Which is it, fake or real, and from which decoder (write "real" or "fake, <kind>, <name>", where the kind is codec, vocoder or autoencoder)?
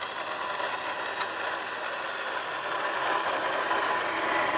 real